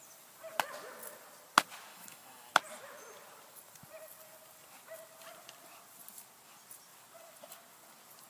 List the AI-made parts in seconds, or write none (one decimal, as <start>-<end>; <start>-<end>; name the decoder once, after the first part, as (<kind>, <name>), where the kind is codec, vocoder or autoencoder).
1.9-2.5 (autoencoder, DAC-VAE)